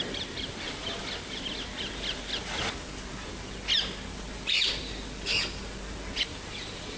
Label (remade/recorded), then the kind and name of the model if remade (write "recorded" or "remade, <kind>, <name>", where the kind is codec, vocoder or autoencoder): recorded